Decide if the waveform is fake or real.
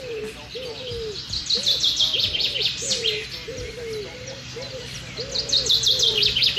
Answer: real